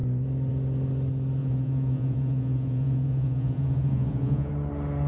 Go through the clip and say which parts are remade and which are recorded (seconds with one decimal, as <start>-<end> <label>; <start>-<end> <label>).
0.0-1.4 recorded; 1.4-4.5 remade; 4.5-5.1 recorded